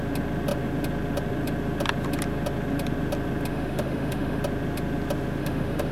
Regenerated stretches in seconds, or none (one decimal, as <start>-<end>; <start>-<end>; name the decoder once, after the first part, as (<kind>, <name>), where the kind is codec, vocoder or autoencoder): 3.5-4.4 (autoencoder, DAC-VAE); 5.4-5.9